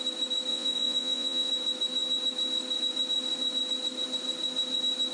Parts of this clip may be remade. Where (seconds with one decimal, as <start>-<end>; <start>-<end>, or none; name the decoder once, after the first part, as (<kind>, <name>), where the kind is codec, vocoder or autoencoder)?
0.5-1.5 (vocoder, Vocos)